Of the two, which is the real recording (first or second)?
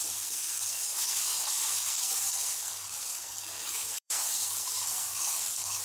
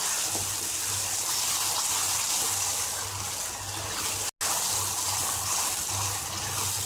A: second